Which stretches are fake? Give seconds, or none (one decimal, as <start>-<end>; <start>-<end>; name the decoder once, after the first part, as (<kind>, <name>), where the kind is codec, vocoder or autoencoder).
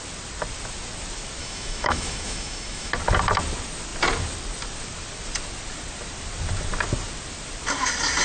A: 1.4-2.9 (autoencoder, DAC-VAE)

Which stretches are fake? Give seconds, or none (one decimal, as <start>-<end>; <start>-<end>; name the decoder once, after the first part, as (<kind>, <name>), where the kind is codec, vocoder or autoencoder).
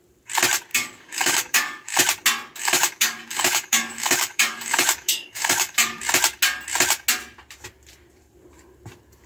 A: 0.7-2.0 (codec, DAC); 2.6-6.0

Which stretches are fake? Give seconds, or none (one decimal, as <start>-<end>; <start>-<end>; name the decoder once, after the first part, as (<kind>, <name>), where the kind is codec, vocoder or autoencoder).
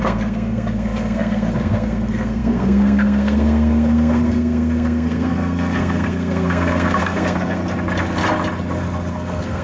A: 0.0-7.6 (codec, SNAC); 9.1-9.6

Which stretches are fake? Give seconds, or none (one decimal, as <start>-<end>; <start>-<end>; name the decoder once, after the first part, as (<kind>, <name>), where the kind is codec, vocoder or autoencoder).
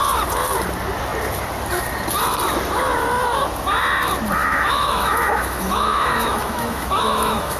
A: 4.4-7.6 (autoencoder, DAC-VAE)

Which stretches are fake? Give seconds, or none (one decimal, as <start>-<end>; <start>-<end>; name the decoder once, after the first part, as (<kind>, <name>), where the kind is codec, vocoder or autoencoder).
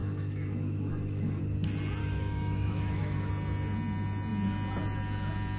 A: 0.0-1.4 (autoencoder, DAC-VAE); 2.0-3.3